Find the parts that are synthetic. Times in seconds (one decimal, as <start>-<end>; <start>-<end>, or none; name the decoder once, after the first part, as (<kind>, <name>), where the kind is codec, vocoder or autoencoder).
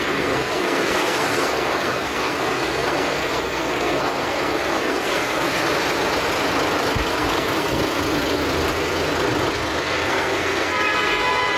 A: 0.0-5.5 (codec, SNAC); 7.1-7.8; 9.8-11.6